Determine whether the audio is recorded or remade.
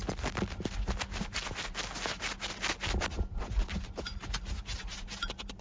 recorded